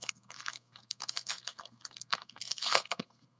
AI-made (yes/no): yes